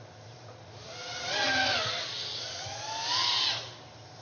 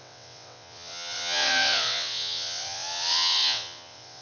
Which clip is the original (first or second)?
first